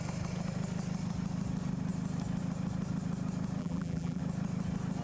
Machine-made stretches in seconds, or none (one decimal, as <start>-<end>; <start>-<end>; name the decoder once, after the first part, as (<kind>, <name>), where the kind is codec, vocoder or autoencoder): 3.6-4.2 (vocoder, BigVGAN v2)